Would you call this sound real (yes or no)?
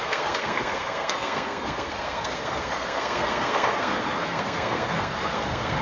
no